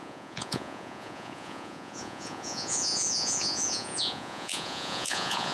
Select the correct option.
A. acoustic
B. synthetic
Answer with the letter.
B